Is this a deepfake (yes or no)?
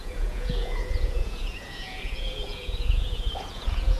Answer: yes